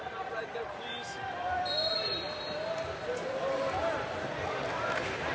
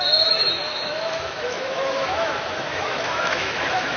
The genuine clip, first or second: first